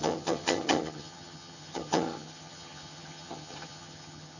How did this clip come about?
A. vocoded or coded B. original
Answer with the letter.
A